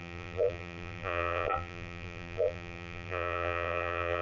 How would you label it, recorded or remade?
remade